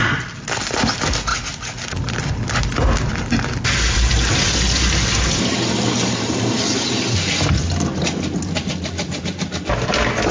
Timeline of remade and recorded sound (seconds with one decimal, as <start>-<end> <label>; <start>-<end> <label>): 0.0-10.3 recorded